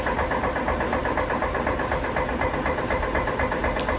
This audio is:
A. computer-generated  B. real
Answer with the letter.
B